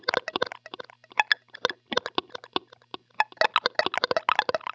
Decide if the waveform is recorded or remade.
recorded